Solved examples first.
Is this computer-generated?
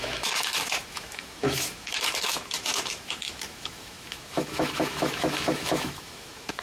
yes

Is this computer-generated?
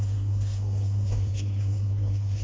yes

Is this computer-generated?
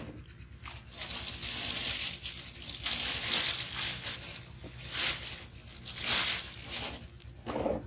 no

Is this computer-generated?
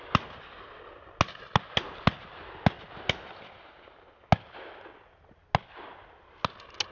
no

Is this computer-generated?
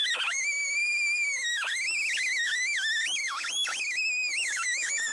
yes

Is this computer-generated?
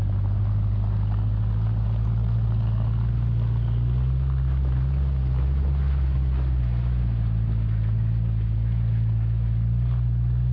no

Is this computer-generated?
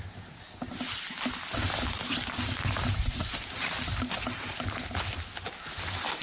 no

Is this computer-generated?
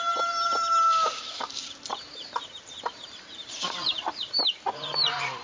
yes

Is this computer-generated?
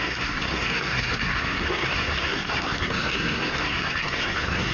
yes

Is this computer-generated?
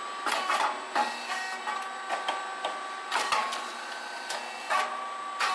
no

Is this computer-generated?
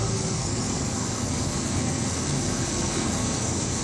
yes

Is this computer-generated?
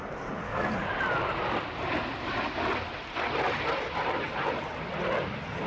no